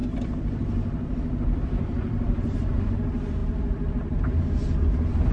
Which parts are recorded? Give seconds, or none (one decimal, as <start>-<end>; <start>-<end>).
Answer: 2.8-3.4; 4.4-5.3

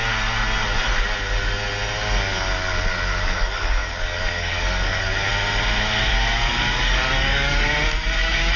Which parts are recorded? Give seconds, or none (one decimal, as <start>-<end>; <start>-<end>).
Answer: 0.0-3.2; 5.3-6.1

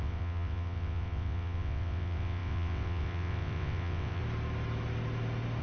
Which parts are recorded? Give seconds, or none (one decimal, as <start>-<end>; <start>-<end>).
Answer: 4.2-5.6

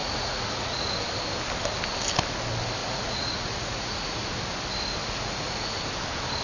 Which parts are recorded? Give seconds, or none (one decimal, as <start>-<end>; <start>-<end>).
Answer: 0.9-2.8; 4.2-5.0; 5.8-6.4

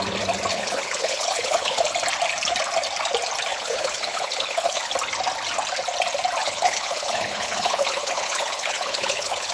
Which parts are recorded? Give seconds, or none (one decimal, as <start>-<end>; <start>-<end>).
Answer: 0.0-0.5; 1.8-3.5; 4.9-6.4

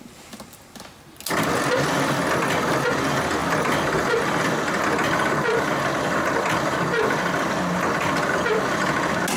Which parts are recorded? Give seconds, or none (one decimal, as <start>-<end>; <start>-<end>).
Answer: 0.0-9.4